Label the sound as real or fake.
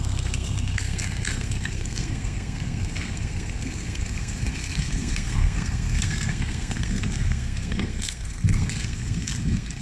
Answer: fake